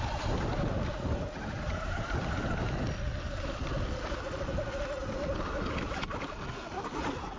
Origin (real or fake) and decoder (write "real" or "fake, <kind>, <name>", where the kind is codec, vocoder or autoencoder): real